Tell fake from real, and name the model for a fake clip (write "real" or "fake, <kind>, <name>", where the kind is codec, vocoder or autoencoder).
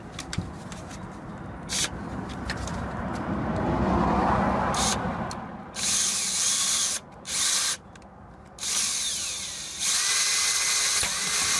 real